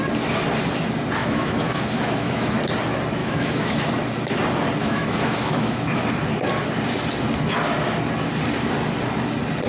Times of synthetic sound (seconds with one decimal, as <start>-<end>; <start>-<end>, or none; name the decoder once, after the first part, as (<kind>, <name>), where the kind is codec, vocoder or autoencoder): 1.2-2.6 (autoencoder, DAC-VAE); 3.2-3.9; 4.8-6.0